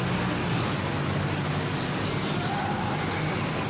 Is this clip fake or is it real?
real